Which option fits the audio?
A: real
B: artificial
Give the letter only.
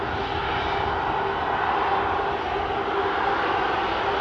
A